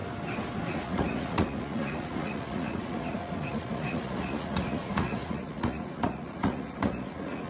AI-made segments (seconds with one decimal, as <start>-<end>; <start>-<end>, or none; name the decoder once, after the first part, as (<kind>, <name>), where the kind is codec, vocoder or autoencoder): 0.7-7.5 (vocoder, Vocos)